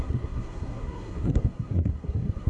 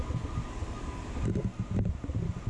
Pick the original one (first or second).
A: second